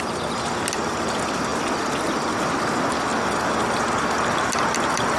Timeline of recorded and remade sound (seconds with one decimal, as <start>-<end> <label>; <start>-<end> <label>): 0.0-5.2 recorded